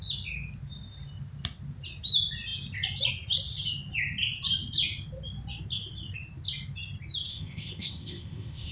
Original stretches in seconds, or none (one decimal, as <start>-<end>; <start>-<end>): 0.0-7.3